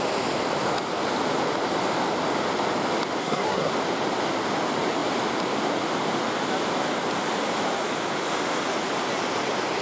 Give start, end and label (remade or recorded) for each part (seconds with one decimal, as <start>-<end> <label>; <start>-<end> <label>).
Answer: 0.0-3.2 recorded; 3.2-3.7 remade; 3.7-9.8 recorded